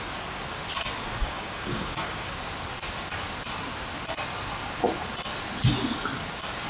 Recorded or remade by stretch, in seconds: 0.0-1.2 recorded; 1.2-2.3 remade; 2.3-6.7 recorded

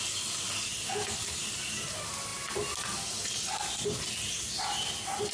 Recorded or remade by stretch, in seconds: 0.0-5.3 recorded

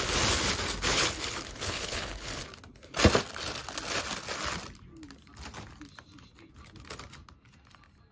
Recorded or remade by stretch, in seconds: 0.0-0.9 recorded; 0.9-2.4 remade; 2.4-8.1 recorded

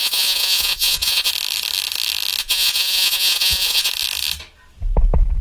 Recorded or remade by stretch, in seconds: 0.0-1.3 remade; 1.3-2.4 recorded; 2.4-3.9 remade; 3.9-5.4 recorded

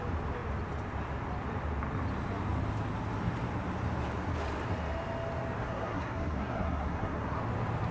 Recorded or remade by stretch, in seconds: 0.0-5.6 recorded; 5.6-7.4 remade; 7.4-7.9 recorded

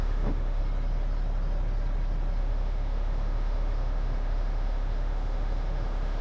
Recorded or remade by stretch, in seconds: 0.0-0.6 remade; 0.6-2.4 recorded; 2.4-6.2 remade

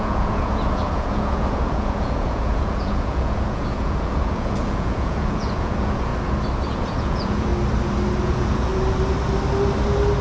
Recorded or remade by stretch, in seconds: 0.0-6.1 remade; 6.1-6.7 recorded; 6.7-7.5 remade; 7.5-8.2 recorded; 8.2-8.7 remade; 8.7-10.2 recorded

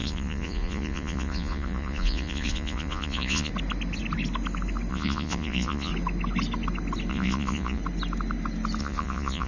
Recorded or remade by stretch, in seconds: 0.0-3.5 remade; 3.5-4.9 recorded; 4.9-5.9 remade; 5.9-7.1 recorded; 7.1-7.8 remade; 7.8-8.8 recorded; 8.8-9.5 remade